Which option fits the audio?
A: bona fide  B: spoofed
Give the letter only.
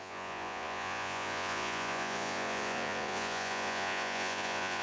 B